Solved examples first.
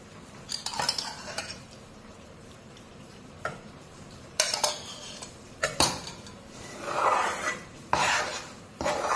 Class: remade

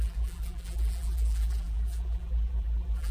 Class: remade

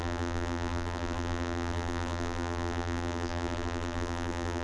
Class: remade